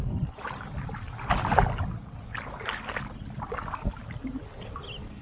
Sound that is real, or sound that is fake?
real